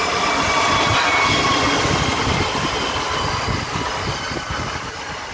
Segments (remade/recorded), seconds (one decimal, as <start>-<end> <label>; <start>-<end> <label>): 0.0-2.1 recorded; 2.1-3.9 remade; 3.9-5.3 recorded

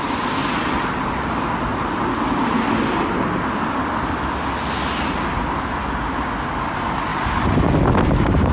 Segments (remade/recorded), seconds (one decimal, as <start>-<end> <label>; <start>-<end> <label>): 0.0-8.5 recorded

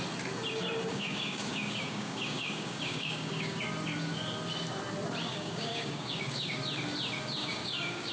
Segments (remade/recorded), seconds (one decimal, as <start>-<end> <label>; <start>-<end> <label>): 0.0-0.9 recorded; 0.9-3.6 remade; 3.6-5.3 recorded; 5.3-6.6 remade; 6.6-7.4 recorded; 7.4-8.1 remade

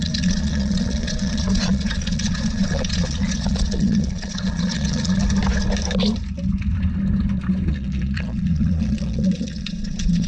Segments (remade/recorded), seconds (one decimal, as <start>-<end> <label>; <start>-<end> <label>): 0.0-5.2 remade; 5.2-7.7 recorded; 7.7-10.3 remade